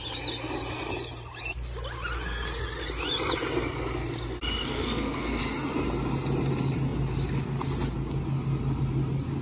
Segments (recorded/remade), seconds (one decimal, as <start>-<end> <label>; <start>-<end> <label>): 0.0-4.7 recorded; 4.7-5.4 remade; 5.4-9.4 recorded